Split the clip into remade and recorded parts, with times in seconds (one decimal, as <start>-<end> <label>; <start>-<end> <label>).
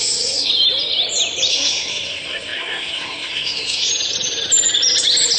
0.0-0.5 remade; 0.5-1.5 recorded; 1.5-3.9 remade; 3.9-5.4 recorded